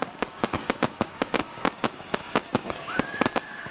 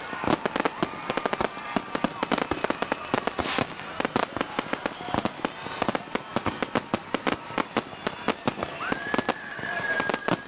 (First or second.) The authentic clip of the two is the second